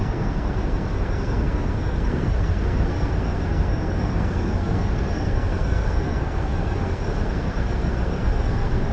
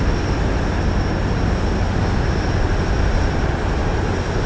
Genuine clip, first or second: second